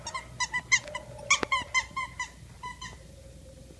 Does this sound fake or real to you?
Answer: real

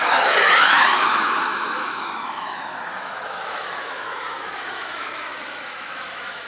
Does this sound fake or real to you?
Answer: fake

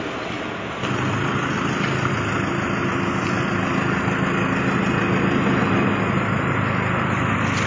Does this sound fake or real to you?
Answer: real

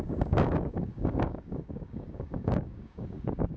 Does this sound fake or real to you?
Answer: fake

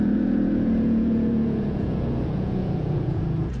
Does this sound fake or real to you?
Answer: fake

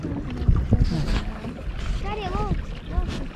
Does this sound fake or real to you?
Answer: real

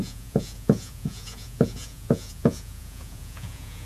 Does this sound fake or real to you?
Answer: fake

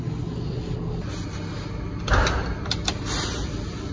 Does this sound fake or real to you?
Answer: real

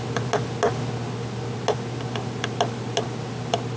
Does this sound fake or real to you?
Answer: real